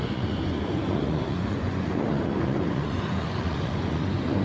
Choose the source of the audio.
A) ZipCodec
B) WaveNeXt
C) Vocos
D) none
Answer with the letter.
C